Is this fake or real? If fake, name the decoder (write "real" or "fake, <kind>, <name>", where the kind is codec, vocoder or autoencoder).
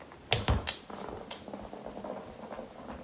real